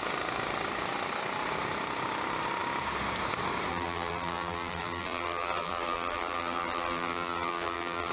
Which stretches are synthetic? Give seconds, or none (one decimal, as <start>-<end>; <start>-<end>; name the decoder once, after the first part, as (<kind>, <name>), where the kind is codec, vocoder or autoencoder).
3.7-8.1 (vocoder, BigVGAN v2)

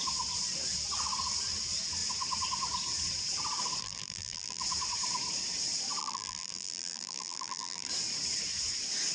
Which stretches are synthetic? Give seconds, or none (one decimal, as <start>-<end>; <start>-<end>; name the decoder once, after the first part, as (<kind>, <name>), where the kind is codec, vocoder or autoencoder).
3.8-4.6 (vocoder, BigVGAN v2); 6.0-7.9

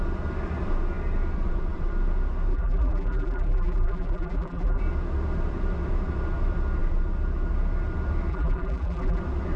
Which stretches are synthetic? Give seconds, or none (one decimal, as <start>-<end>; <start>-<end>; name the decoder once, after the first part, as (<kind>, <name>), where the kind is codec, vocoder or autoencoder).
2.5-4.8 (vocoder, BigVGAN v2); 8.3-9.2

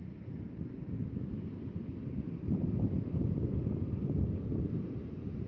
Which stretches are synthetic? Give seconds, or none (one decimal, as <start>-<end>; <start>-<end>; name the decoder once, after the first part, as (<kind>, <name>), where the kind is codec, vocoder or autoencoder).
1.7-5.0 (vocoder, BigVGAN v2)

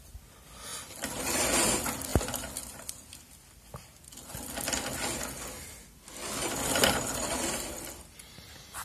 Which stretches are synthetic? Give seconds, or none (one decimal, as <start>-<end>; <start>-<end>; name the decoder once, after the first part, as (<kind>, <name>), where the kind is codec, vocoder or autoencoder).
0.7-1.2 (vocoder, BigVGAN v2)

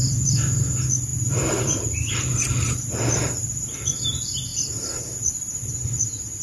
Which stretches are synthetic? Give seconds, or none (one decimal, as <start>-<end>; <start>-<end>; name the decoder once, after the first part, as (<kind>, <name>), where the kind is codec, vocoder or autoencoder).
1.1-2.7 (vocoder, BigVGAN v2)

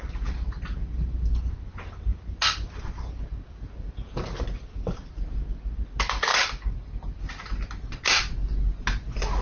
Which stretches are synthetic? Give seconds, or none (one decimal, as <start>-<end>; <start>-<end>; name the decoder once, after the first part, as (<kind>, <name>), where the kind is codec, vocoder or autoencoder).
none